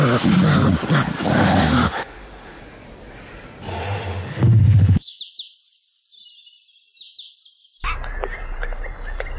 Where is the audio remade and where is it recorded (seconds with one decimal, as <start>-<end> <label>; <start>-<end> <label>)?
0.0-1.3 recorded; 1.3-2.6 remade; 2.6-3.7 recorded; 3.7-5.2 remade; 5.2-9.4 recorded